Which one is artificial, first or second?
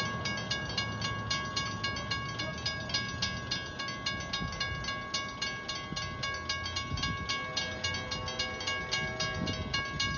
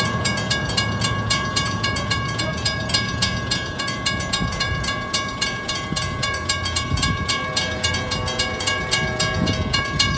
second